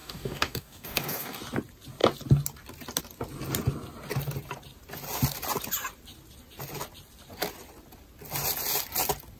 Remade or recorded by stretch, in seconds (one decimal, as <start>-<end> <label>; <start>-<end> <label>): 0.0-1.4 remade; 1.4-9.4 recorded